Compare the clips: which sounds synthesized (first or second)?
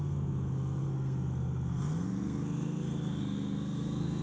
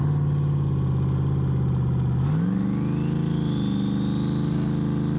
first